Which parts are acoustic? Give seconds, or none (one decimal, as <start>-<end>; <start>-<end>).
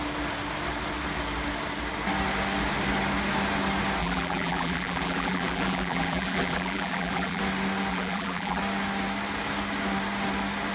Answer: 0.0-4.0; 7.4-7.9; 8.6-10.7